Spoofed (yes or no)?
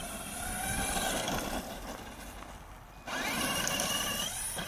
no